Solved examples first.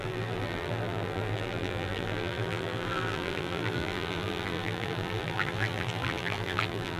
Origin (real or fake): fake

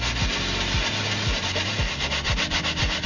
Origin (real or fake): real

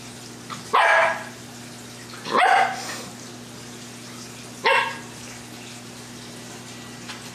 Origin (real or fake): real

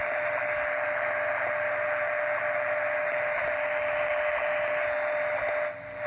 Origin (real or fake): real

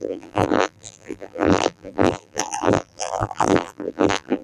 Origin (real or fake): fake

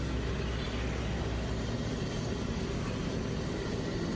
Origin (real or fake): real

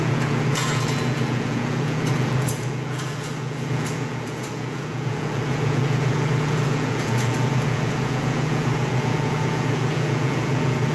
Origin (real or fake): fake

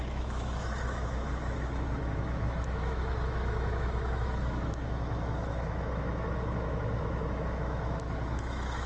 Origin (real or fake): fake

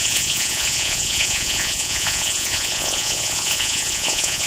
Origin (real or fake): fake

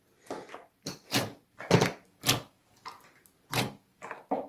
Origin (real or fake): real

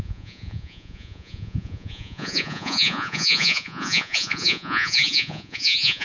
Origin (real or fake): fake